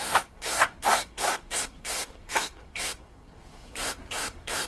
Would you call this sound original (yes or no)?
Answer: no